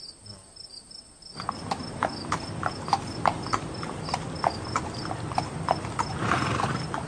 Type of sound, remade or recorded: recorded